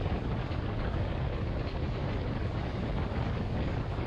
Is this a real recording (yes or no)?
no